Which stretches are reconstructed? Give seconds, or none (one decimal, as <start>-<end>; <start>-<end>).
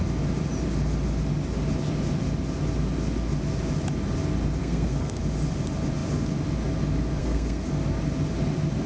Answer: 4.6-5.2; 7.2-7.7